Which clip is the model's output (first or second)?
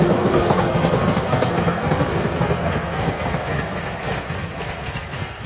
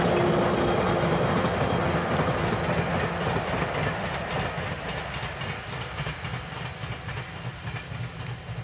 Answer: first